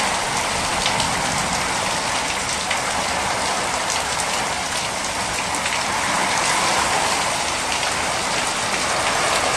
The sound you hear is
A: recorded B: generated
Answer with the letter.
B